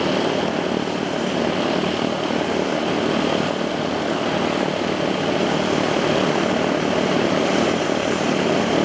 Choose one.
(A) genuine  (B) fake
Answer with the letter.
A